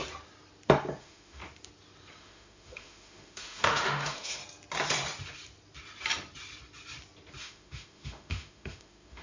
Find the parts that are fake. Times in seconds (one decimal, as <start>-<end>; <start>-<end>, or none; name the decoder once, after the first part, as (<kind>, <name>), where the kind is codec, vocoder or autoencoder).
1.0-1.4 (autoencoder, DAC-VAE); 2.2-4.4; 7.4-9.2